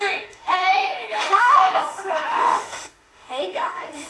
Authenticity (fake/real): fake